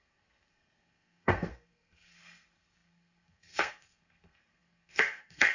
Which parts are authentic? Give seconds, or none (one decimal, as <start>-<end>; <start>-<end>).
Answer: none